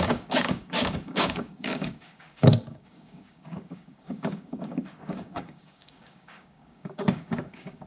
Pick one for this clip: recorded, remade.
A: remade